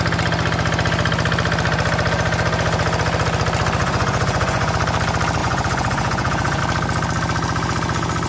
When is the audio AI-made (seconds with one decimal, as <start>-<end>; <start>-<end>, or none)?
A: 3.8-4.7; 5.4-6.6